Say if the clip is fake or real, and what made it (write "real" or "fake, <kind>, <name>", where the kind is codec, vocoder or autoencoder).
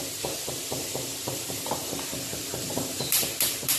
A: real